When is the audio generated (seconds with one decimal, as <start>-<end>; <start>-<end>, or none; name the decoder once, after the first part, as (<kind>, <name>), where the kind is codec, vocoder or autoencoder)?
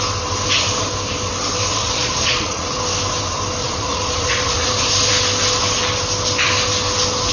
1.8-2.8 (vocoder, Vocos); 3.6-4.7